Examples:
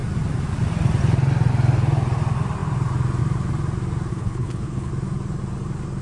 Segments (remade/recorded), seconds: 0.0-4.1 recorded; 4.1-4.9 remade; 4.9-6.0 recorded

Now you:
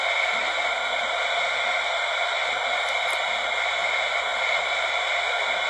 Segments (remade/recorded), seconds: 0.0-4.3 recorded; 4.3-4.9 remade; 4.9-5.7 recorded

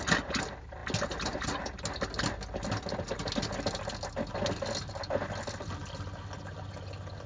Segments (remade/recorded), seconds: 0.0-7.3 recorded

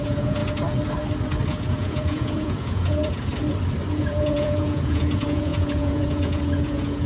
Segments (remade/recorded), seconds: 0.0-0.4 remade; 0.4-1.5 recorded; 1.5-3.3 remade; 3.3-4.0 recorded; 4.0-7.1 remade

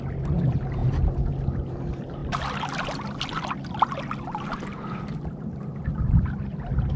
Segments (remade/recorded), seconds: 0.0-7.0 recorded

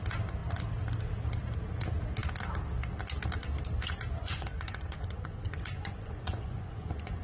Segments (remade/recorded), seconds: 0.0-4.2 recorded; 4.2-7.2 remade

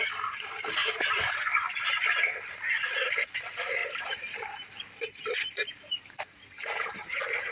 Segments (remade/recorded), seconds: 0.0-0.8 recorded; 0.8-2.7 remade; 2.7-3.8 recorded; 3.8-7.5 remade